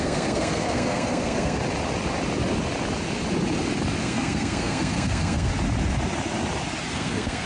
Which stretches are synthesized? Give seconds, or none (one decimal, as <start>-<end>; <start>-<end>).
0.0-1.6; 4.0-5.5; 6.9-7.5